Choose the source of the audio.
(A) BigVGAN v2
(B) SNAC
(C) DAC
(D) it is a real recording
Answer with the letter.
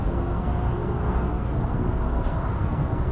B